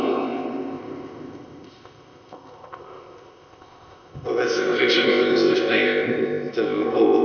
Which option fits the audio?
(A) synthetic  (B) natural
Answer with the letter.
A